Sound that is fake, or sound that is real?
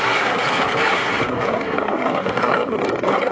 fake